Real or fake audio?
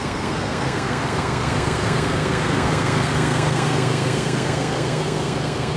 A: fake